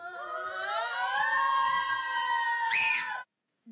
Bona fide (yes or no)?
no